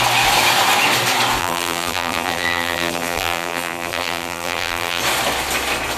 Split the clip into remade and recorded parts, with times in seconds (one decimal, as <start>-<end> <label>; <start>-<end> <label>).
0.0-1.4 recorded; 1.4-5.0 remade; 5.0-6.0 recorded